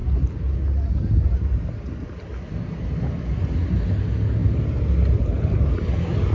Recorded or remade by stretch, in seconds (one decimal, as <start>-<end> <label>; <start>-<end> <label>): 0.0-6.3 recorded